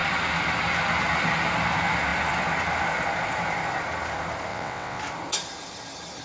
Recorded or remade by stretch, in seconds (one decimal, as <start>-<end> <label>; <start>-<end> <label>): 0.0-4.5 recorded; 4.5-5.0 remade; 5.0-6.2 recorded